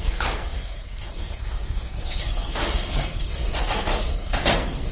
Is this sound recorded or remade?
remade